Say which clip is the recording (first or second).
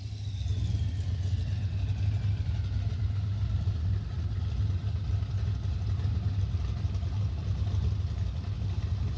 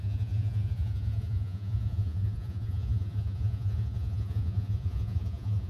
first